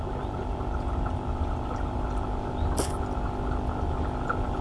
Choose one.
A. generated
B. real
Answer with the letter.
B